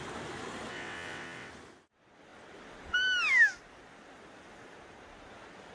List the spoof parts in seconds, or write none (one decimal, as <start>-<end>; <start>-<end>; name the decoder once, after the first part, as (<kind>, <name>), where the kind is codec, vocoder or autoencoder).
0.7-1.5 (vocoder, WaveNeXt)